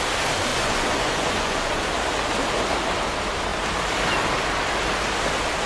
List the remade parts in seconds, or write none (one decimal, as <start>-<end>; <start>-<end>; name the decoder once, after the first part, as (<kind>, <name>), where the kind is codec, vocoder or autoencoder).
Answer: 0.5-1.9 (vocoder, Vocos)